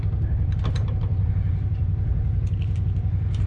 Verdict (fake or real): real